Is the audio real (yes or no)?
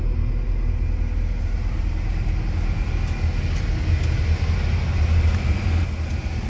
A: yes